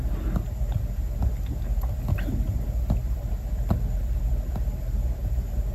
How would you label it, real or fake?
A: real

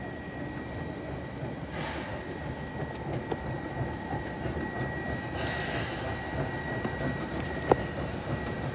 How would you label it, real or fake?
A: real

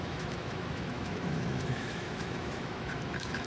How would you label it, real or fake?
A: fake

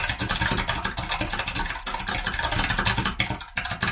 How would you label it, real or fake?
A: real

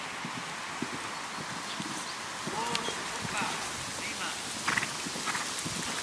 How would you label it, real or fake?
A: real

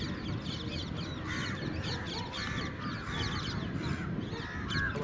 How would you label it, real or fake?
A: real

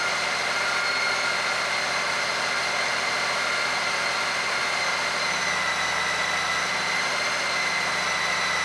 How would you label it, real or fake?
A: real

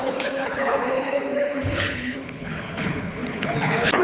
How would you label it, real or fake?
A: fake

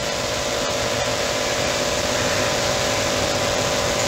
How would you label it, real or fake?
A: real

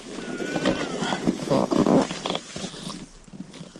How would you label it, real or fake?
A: real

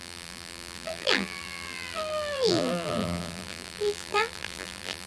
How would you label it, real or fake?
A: fake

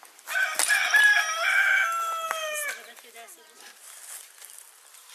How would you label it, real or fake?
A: real